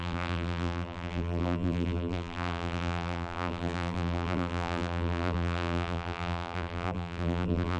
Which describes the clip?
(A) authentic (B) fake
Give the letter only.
B